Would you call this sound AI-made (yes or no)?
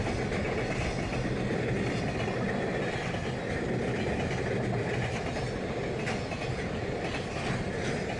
no